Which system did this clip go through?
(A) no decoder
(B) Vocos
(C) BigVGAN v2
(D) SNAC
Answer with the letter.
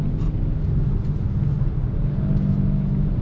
A